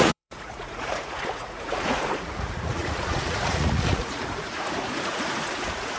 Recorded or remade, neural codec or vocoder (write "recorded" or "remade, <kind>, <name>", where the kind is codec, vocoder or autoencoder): remade, vocoder, Vocos